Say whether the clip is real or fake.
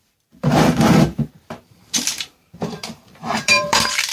fake